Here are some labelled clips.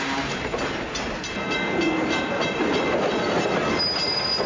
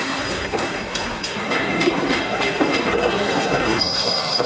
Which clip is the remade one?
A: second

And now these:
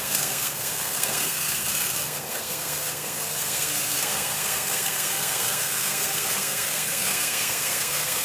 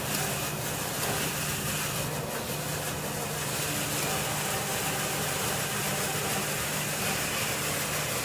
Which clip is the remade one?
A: first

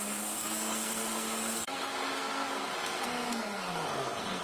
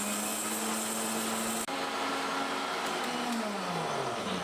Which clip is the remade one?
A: first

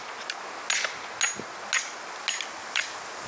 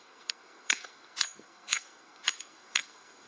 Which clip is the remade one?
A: second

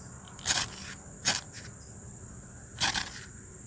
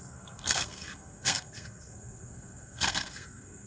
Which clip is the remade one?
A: second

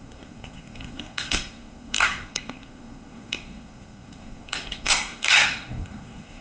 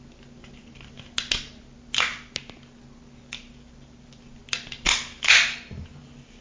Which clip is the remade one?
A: first